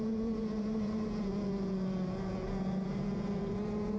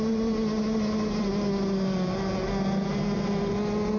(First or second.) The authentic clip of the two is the second